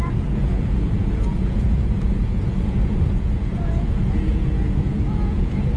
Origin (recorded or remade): remade